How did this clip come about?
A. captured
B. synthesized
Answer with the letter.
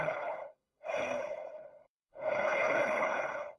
B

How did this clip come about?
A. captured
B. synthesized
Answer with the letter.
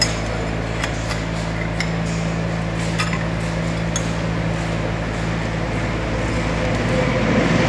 A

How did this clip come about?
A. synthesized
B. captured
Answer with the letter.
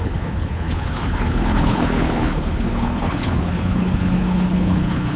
A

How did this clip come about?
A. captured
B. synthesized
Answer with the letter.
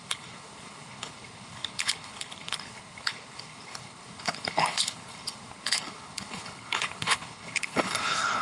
B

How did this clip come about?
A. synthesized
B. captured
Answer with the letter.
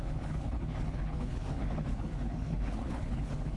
A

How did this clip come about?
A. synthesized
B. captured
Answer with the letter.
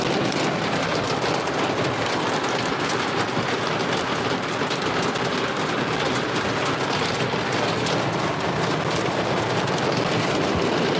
B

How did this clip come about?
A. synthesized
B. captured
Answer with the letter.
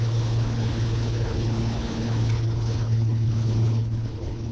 A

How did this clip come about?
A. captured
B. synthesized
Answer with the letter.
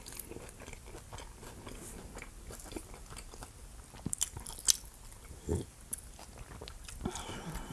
A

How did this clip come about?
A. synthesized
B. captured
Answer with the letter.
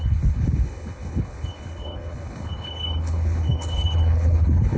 A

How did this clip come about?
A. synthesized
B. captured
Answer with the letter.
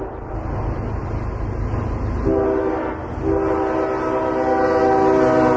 B